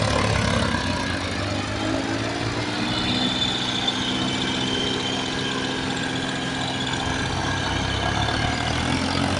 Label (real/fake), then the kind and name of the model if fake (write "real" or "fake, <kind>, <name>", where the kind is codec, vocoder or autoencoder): real